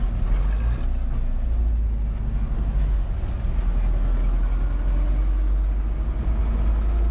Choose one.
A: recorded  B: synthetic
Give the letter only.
A